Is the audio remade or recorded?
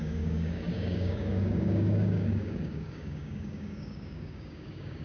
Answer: remade